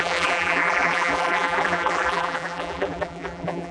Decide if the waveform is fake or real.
fake